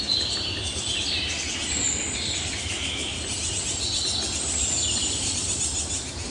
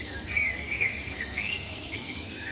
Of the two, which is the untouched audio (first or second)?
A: first